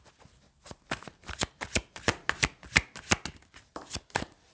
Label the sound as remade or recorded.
recorded